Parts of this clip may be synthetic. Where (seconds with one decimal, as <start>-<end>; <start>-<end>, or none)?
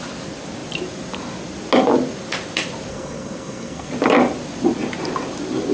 2.9-3.9